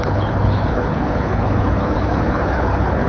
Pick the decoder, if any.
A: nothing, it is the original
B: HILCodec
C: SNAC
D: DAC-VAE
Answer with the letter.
B